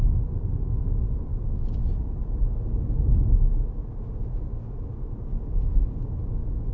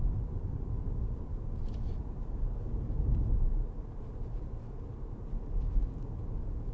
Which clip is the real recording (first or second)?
first